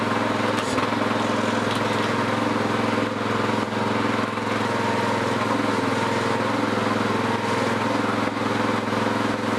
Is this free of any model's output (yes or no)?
yes